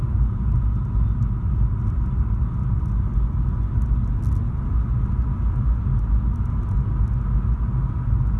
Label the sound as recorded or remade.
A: recorded